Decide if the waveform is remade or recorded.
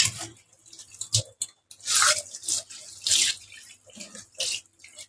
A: recorded